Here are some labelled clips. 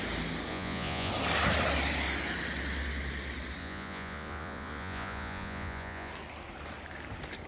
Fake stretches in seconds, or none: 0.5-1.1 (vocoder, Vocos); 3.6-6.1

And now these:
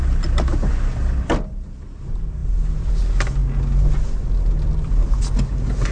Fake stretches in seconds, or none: none

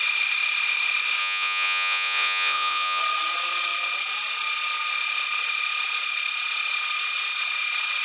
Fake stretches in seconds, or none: 1.2-3.0 (vocoder, Vocos)

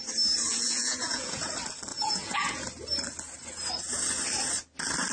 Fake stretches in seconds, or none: 0.5-1.5 (vocoder, Vocos); 1.9-2.6